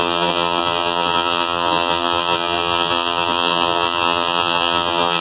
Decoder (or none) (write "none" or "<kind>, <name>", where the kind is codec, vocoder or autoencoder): vocoder, BigVGAN v2